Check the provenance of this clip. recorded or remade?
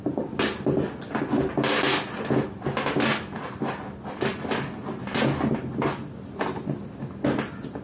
recorded